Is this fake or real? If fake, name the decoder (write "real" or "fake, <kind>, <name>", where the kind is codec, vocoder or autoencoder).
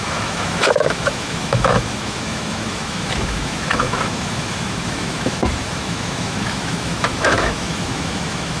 fake, autoencoder, DAC-VAE